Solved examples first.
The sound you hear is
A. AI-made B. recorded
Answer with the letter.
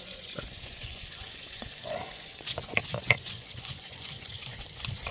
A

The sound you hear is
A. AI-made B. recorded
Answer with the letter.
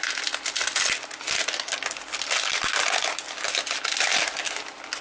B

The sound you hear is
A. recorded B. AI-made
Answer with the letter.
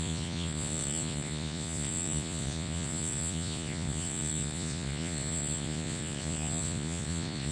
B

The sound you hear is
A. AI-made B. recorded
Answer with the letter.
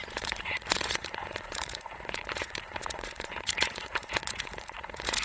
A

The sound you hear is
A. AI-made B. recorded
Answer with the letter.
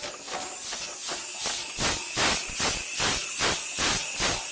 B